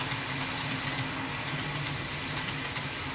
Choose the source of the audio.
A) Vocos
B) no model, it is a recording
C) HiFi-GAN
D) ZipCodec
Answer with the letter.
B